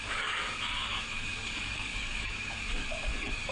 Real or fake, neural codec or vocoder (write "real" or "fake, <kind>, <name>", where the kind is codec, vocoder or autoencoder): fake, codec, DAC